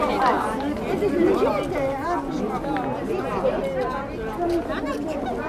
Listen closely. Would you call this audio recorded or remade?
recorded